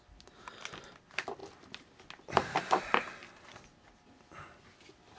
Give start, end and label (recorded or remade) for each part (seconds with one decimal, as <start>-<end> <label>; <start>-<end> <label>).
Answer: 0.0-5.2 recorded